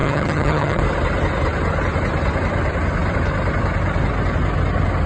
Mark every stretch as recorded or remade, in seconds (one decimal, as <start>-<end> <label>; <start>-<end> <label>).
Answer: 0.0-0.8 remade; 0.8-5.1 recorded

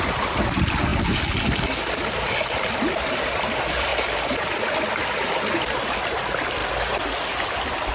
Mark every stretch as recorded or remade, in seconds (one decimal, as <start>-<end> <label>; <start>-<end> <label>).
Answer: 0.0-0.9 remade; 0.9-2.1 recorded; 2.1-3.9 remade; 3.9-5.5 recorded; 5.5-6.6 remade; 6.6-7.9 recorded

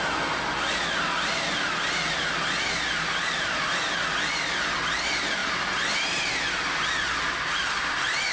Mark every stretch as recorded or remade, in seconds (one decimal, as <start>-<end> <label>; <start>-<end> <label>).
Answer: 0.0-8.3 recorded